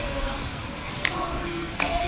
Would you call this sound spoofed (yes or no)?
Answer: yes